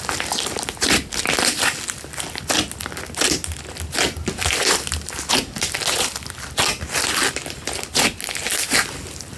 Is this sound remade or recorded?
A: recorded